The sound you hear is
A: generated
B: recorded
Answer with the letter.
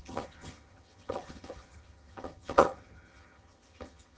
A